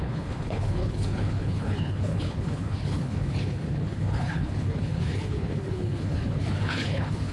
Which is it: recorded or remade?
remade